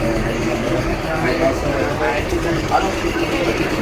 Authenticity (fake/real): fake